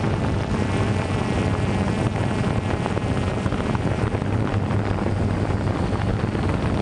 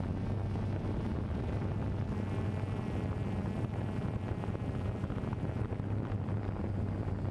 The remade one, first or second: first